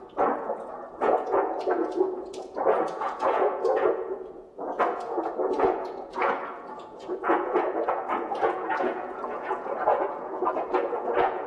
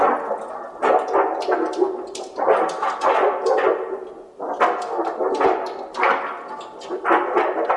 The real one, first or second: second